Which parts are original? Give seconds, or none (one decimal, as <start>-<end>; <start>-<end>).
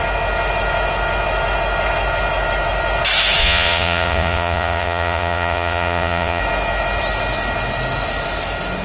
0.0-3.4; 6.4-8.8